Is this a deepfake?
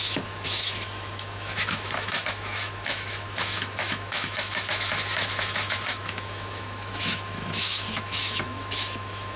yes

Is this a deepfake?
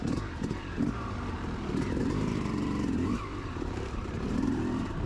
yes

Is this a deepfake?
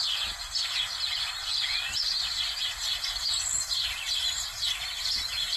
no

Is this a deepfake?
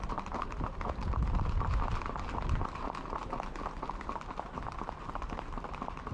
no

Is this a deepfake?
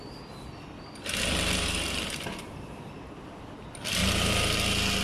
no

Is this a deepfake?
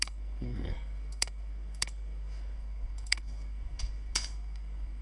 yes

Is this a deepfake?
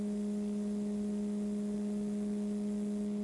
no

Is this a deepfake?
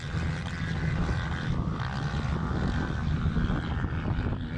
no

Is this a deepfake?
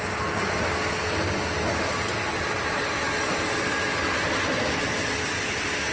no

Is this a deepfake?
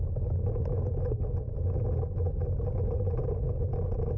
no